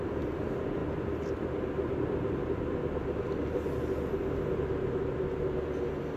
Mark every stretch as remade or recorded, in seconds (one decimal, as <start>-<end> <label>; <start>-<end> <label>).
0.0-6.2 recorded